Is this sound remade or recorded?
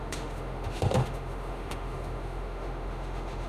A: remade